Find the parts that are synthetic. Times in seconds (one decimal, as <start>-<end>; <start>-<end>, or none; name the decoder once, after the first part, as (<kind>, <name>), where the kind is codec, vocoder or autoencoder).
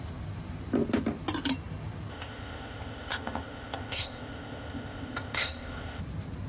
2.1-6.0 (codec, ZipCodec)